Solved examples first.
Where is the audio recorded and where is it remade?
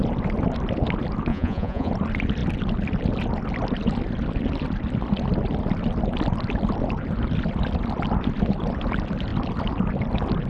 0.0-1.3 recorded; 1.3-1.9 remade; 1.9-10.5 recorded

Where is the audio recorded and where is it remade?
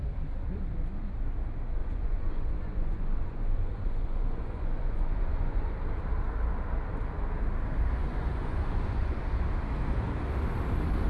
0.0-1.8 recorded; 1.8-5.7 remade; 5.7-8.0 recorded; 8.0-9.2 remade; 9.2-11.1 recorded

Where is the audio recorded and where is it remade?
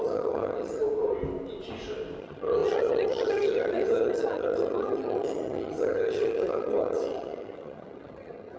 0.0-0.8 remade; 0.8-2.2 recorded; 2.2-8.6 remade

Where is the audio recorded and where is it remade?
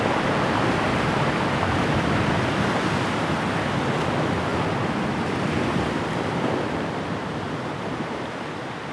0.0-4.5 recorded; 4.5-7.0 remade; 7.0-8.9 recorded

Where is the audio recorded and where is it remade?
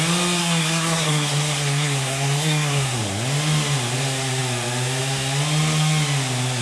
0.0-0.4 recorded; 0.4-3.0 remade; 3.0-6.6 recorded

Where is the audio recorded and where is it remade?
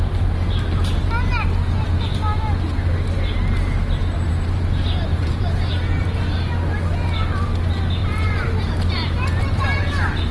0.0-5.1 recorded; 5.1-5.7 remade; 5.7-10.3 recorded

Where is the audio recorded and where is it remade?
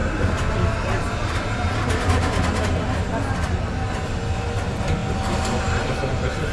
0.0-6.5 recorded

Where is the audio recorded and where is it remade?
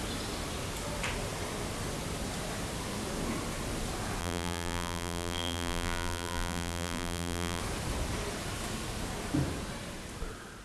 0.0-4.2 recorded; 4.2-7.6 remade; 7.6-10.6 recorded